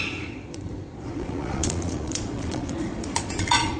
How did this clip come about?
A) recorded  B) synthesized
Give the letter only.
B